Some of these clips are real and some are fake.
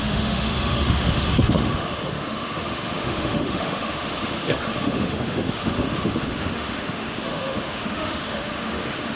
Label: fake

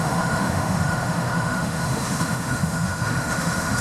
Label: fake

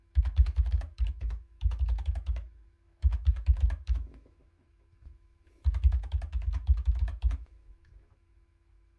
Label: fake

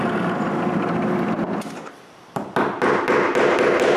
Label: real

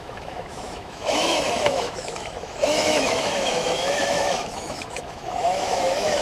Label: fake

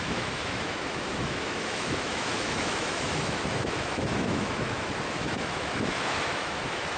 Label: fake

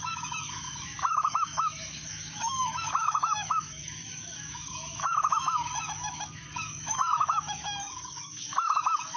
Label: fake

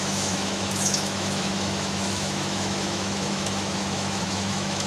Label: fake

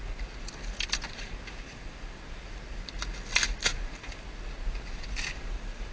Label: real